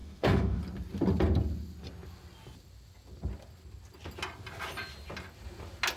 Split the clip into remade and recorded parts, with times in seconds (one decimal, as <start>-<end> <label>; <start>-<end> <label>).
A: 0.0-0.6 remade; 0.6-6.0 recorded